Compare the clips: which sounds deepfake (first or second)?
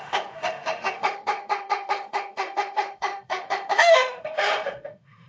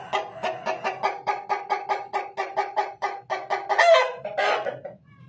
first